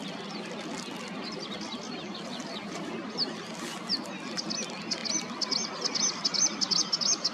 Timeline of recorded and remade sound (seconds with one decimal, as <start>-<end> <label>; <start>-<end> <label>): 0.0-7.3 recorded